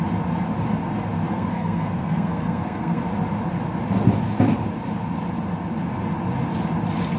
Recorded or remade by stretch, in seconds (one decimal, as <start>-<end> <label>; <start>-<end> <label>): 0.0-1.3 recorded; 1.3-3.0 remade; 3.0-7.2 recorded